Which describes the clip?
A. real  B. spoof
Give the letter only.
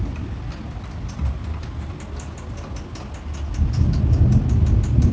A